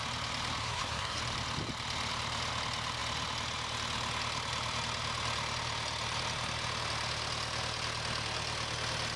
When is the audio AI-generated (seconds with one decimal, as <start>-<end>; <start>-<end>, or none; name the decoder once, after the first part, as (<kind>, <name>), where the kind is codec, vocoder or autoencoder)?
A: 0.6-1.2 (codec, SNAC)